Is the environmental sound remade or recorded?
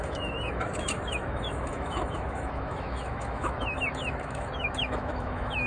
remade